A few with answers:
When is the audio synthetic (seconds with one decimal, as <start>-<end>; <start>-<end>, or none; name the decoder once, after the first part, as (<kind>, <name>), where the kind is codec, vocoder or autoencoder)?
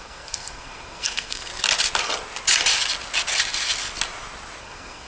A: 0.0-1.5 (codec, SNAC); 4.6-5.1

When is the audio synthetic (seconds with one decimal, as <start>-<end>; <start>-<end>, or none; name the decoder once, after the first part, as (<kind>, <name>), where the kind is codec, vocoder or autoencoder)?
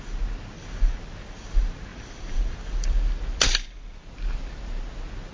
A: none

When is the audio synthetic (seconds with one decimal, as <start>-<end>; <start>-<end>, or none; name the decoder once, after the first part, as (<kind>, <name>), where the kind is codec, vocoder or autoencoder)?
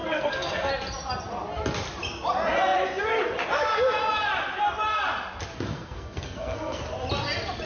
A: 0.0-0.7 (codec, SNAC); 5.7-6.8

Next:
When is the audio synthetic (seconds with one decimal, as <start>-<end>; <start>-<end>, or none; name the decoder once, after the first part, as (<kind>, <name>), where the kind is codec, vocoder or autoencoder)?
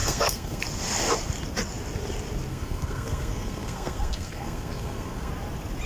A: 0.0-0.6 (codec, SNAC); 2.5-5.3